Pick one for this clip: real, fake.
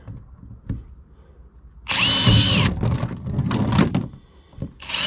real